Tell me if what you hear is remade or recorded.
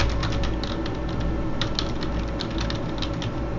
recorded